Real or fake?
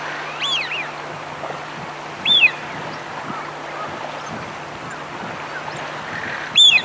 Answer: real